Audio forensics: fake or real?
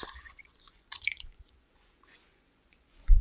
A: fake